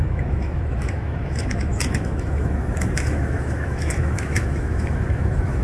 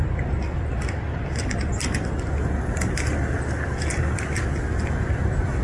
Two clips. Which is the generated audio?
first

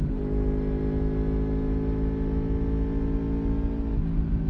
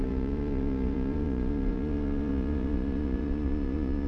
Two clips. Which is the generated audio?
second